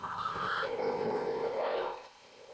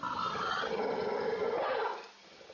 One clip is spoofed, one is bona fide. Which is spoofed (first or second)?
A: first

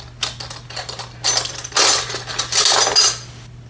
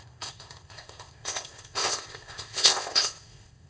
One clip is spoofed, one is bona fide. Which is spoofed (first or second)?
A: second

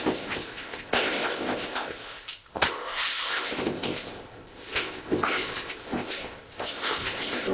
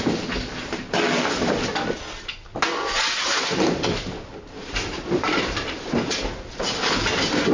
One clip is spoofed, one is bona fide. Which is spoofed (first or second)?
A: first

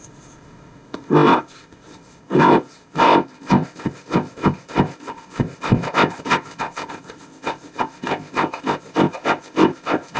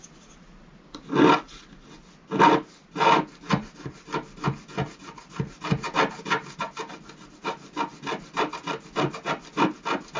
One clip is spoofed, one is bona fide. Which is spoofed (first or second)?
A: first